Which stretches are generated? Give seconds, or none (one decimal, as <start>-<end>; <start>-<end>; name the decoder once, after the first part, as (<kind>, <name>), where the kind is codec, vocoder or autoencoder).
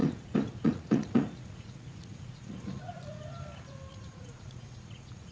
0.0-3.2 (vocoder, Vocos); 3.9-5.3